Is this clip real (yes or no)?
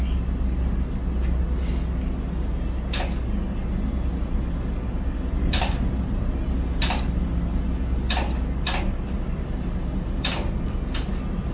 yes